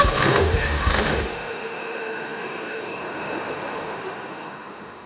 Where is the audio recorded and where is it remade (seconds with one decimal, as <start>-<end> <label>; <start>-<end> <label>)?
0.0-5.1 remade